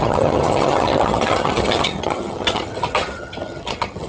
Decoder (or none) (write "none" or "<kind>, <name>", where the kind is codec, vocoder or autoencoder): vocoder, HiFi-GAN